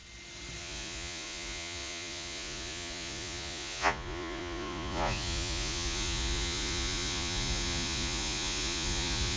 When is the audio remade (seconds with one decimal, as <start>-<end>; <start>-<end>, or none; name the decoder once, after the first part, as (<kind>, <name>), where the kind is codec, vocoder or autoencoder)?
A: 0.6-9.4 (vocoder, Vocos)